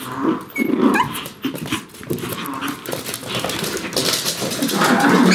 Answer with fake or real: real